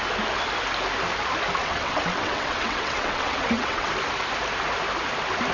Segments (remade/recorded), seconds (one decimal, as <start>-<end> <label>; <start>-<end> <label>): 0.0-1.6 recorded; 1.6-3.9 remade; 3.9-5.5 recorded